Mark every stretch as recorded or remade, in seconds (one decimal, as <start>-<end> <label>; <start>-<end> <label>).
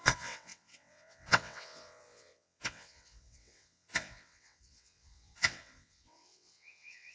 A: 0.0-7.1 remade